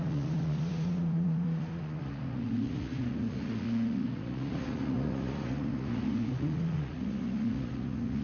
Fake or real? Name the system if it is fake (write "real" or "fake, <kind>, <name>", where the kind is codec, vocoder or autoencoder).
fake, vocoder, Vocos